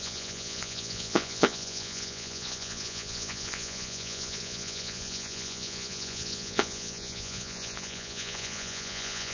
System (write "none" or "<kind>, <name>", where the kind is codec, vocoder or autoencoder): vocoder, Vocos